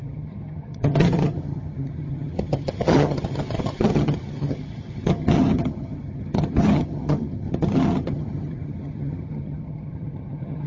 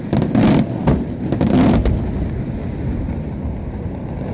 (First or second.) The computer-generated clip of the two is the first